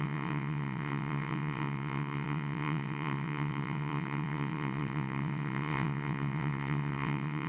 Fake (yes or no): yes